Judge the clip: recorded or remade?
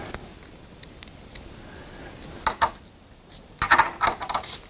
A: recorded